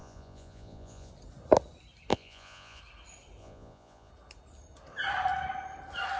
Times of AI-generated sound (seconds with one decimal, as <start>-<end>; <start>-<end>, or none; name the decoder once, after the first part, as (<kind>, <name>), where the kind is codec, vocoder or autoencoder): 0.0-1.1 (vocoder, Vocos); 2.1-2.8; 3.4-4.1